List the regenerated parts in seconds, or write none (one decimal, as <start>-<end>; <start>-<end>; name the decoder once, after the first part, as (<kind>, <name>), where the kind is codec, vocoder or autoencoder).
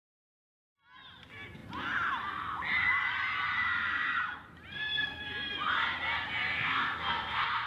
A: 4.7-5.2 (codec, SNAC); 6.5-7.7